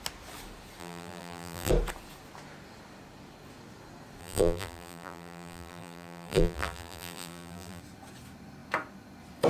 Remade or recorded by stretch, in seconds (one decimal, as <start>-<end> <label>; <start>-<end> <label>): 0.0-0.8 recorded; 0.8-1.7 remade; 1.7-4.2 recorded; 4.2-7.8 remade; 7.8-9.5 recorded